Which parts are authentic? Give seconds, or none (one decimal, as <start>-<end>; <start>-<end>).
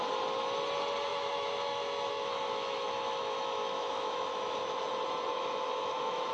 0.0-1.1; 4.8-5.3